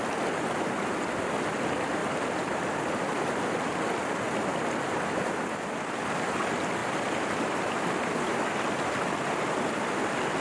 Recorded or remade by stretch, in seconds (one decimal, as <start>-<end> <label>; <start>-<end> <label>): 0.0-2.0 recorded; 2.0-3.0 remade; 3.0-10.4 recorded